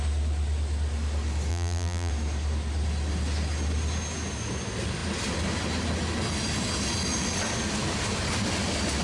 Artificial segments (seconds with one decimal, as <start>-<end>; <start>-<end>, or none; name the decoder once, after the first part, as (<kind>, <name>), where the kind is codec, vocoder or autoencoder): 1.5-2.1 (vocoder, BigVGAN v2)